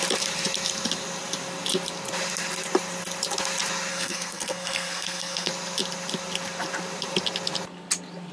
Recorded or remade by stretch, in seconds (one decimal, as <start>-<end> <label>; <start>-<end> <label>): 0.0-3.9 recorded; 3.9-5.5 remade; 5.5-8.3 recorded